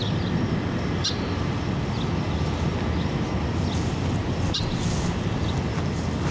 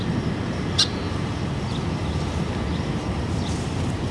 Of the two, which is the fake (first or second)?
second